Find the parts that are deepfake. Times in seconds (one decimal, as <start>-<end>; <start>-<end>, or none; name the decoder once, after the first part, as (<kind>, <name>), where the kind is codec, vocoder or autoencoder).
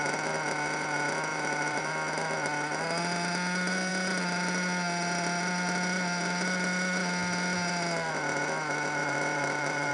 1.3-1.9 (vocoder, BigVGAN v2); 9.0-9.9